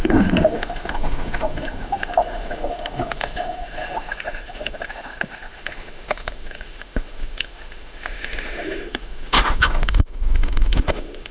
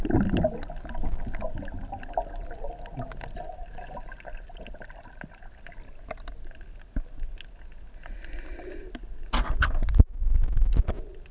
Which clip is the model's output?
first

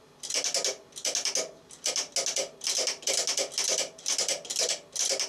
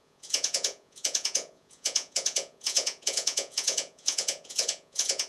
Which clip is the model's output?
second